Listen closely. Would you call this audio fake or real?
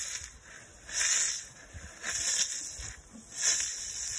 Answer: real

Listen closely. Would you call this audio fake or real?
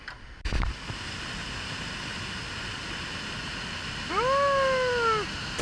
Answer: real